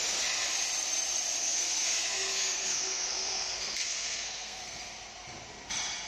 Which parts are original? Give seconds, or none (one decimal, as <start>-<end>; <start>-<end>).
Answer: 0.0-1.4; 4.8-6.1